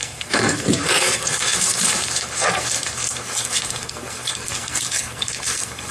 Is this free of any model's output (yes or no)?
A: no